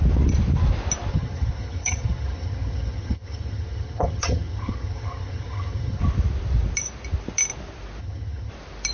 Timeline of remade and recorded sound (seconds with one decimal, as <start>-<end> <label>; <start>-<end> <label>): 0.0-1.1 recorded; 1.1-6.0 remade; 6.0-8.0 recorded; 8.0-8.5 remade; 8.5-8.9 recorded